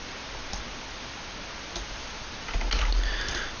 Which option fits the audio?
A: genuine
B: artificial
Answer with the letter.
A